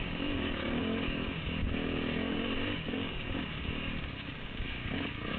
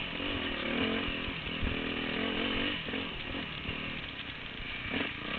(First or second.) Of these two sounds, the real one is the second